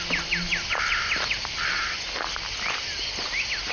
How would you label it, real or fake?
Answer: real